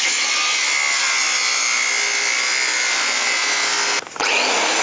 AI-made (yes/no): no